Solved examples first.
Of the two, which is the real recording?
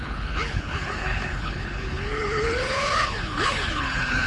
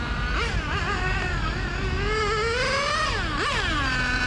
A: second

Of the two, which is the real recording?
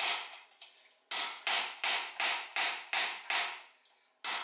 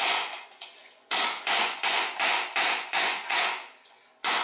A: first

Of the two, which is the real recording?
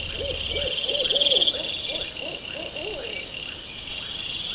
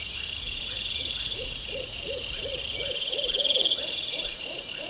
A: first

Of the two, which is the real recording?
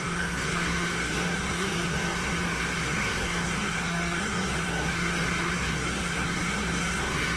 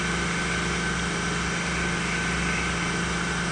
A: second